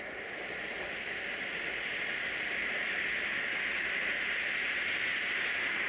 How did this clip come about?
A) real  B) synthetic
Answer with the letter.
A